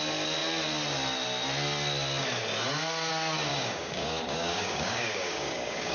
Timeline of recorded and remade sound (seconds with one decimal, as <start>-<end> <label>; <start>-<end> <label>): 0.0-3.5 recorded; 3.5-5.9 remade